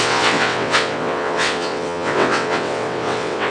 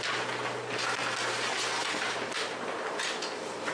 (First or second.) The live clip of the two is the second